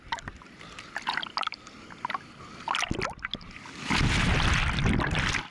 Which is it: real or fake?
real